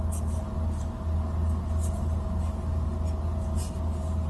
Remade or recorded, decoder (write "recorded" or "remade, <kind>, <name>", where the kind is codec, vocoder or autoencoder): recorded